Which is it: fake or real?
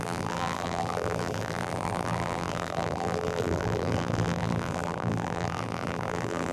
fake